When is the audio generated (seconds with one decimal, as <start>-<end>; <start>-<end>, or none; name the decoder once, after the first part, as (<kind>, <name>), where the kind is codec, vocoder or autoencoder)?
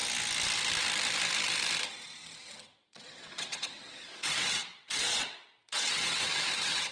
2.8-6.9 (vocoder, WaveNeXt)